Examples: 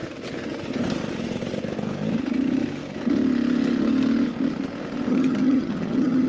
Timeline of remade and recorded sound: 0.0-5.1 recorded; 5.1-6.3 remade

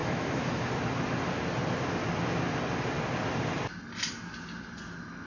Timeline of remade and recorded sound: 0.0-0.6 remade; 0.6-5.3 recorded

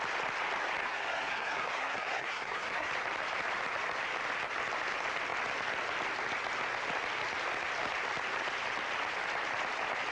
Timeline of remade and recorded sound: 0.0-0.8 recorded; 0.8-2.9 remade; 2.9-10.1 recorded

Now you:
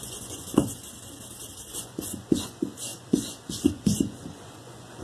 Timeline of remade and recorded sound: 0.0-0.6 remade; 0.6-1.7 recorded; 1.7-5.0 remade

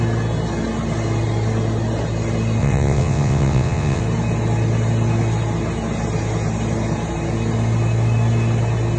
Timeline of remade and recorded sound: 0.0-2.6 recorded; 2.6-4.0 remade; 4.0-9.0 recorded

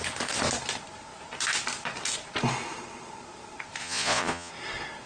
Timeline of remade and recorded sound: 0.0-3.8 recorded; 3.8-4.5 remade; 4.5-5.1 recorded

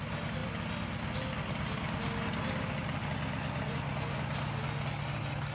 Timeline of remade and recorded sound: 0.0-5.5 recorded